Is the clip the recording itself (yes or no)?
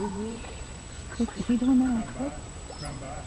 no